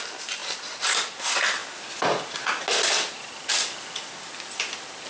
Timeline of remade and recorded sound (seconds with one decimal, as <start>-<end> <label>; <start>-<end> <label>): 0.0-5.1 recorded